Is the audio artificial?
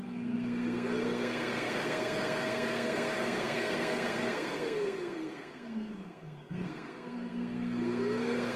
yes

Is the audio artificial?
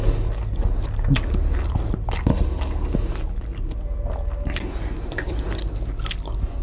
no